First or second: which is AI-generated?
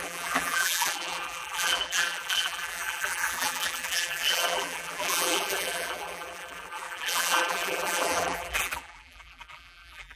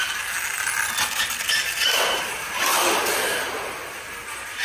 first